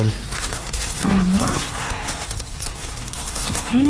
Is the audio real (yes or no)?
no